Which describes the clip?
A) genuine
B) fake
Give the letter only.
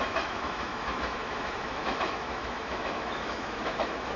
B